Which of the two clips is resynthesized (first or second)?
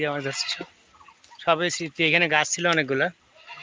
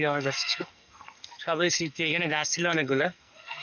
second